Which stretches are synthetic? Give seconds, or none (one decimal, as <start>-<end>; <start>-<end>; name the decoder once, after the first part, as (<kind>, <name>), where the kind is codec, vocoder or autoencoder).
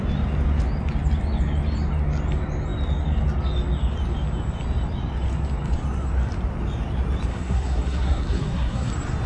7.3-8.9 (codec, SNAC)